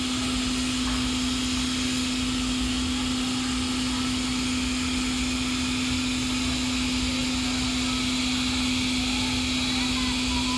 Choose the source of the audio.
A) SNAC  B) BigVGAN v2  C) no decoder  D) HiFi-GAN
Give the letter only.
C